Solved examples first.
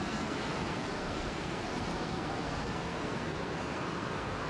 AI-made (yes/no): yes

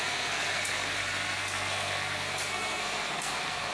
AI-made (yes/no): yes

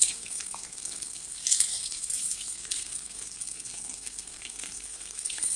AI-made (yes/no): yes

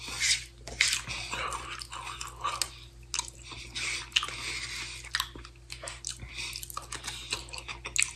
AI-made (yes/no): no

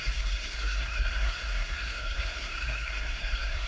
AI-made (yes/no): yes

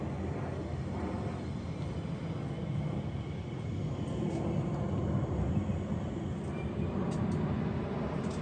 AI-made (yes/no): no